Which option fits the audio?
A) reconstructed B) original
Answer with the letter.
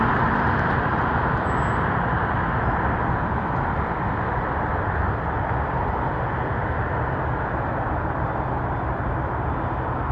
B